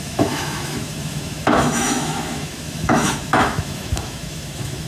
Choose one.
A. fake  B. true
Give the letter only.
A